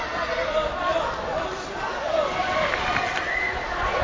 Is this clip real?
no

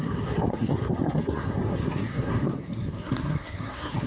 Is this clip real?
no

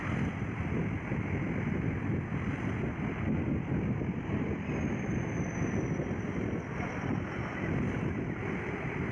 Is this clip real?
yes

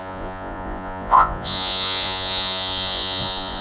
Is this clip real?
no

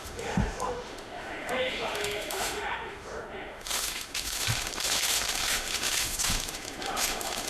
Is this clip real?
no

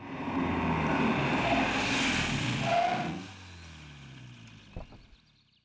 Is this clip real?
yes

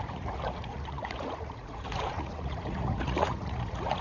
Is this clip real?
no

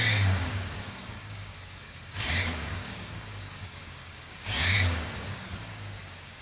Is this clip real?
no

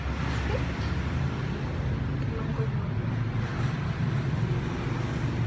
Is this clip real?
yes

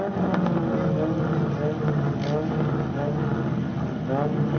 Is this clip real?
yes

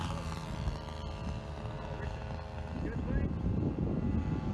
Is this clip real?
yes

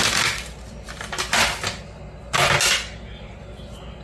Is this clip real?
yes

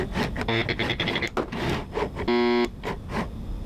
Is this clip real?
yes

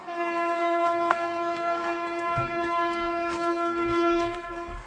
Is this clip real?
no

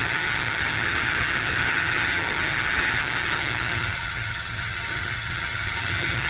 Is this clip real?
no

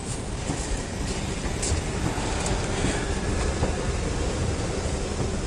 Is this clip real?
yes